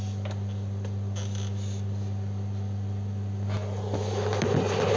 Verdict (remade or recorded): recorded